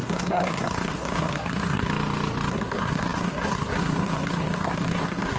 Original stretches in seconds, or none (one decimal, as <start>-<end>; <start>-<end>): 1.9-2.5